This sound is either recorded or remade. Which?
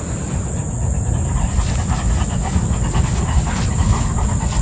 recorded